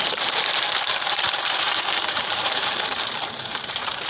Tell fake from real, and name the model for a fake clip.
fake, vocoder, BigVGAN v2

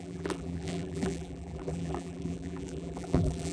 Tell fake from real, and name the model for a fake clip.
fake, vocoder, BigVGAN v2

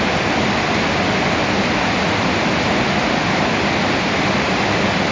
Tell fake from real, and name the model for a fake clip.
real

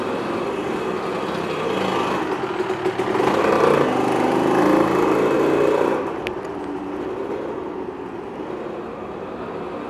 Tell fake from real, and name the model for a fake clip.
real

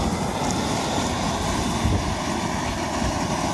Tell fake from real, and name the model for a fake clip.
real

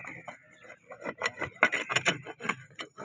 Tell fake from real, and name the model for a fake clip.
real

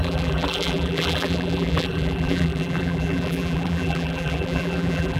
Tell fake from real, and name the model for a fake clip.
fake, vocoder, BigVGAN v2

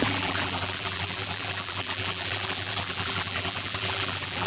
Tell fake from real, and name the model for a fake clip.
fake, vocoder, BigVGAN v2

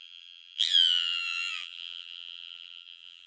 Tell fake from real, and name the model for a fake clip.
fake, vocoder, BigVGAN v2